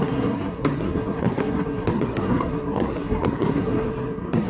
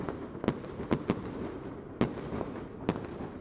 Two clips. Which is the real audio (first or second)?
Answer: second